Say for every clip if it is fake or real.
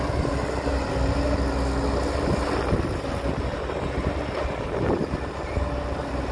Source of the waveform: real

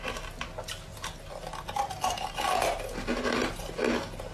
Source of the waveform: real